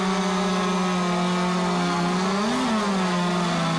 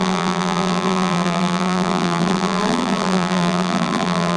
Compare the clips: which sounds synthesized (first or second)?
second